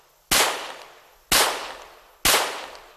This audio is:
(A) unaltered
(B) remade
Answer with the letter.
A